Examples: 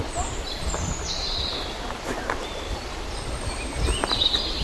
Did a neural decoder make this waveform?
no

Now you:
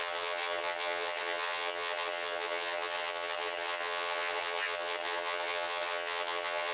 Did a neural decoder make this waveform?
yes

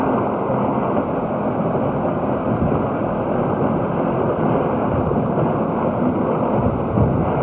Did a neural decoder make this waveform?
no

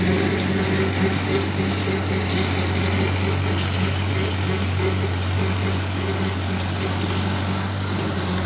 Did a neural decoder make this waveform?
no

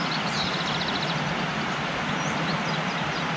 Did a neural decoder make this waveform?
no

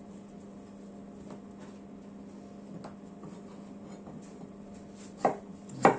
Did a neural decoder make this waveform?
no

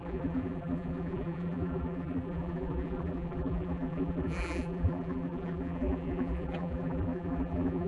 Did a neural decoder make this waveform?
yes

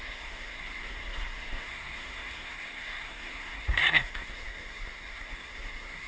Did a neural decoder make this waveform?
yes